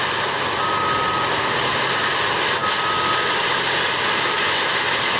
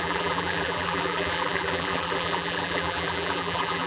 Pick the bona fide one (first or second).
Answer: first